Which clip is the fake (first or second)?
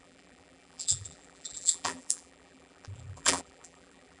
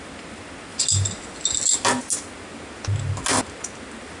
first